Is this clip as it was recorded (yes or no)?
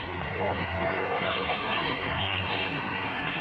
no